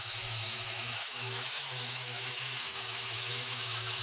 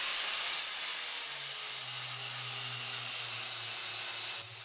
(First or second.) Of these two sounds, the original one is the second